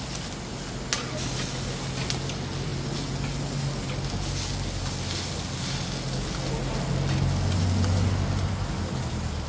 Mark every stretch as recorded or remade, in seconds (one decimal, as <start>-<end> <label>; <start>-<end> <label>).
0.0-9.5 recorded